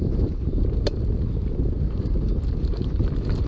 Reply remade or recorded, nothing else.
remade